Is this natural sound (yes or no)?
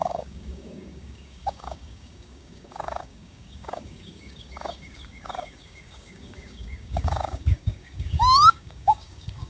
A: no